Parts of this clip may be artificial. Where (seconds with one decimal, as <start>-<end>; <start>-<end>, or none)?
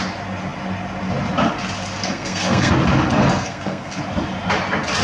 2.0-2.7; 3.2-4.0